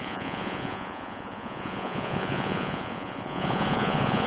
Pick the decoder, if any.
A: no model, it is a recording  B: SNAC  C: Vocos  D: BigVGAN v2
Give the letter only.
C